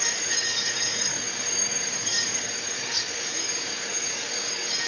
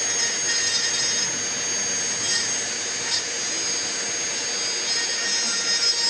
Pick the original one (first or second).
second